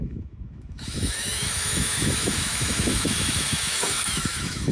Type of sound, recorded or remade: remade